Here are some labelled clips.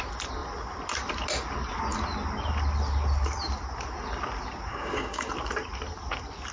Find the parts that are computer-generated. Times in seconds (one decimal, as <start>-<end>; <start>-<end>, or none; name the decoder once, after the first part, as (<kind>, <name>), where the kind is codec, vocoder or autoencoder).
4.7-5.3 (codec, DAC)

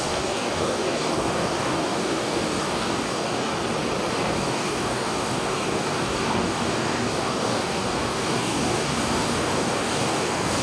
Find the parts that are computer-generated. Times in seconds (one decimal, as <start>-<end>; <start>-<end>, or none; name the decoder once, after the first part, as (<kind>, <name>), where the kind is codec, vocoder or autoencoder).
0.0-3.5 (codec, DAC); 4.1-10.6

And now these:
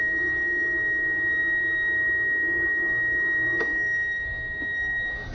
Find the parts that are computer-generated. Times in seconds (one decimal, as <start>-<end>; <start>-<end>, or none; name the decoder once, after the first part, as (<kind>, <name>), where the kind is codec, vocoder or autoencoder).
0.0-5.3 (codec, DAC)

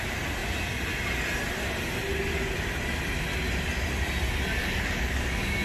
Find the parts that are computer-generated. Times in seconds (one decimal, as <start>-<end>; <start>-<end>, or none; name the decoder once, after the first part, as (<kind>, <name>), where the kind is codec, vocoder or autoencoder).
4.6-5.6 (codec, DAC)

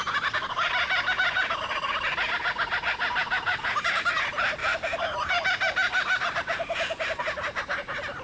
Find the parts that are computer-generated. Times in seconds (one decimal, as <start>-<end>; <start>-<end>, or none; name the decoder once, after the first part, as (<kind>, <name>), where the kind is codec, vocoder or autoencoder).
none